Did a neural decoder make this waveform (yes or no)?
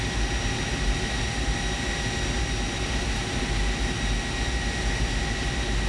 no